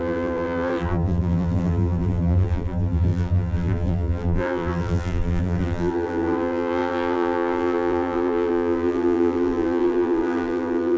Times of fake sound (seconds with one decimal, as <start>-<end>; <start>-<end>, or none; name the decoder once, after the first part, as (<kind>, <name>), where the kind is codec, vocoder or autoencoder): 0.0-11.0 (vocoder, BigVGAN v2)